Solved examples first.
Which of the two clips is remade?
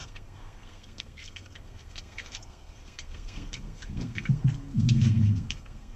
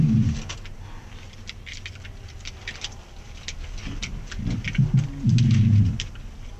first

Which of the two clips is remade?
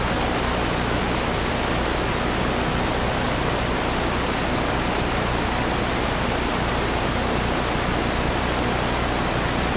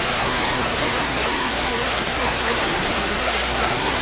second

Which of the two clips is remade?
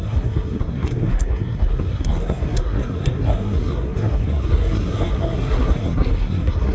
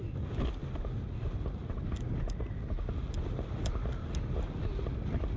first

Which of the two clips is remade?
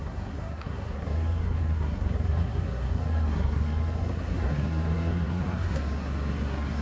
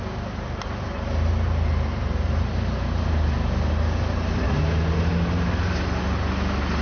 first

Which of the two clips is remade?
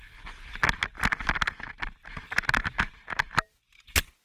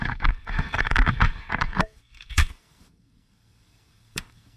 second